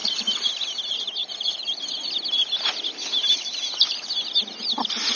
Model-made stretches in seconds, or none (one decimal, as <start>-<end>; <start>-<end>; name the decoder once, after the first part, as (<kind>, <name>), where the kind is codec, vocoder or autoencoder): 0.0-0.5 (vocoder, BigVGAN v2); 1.2-2.1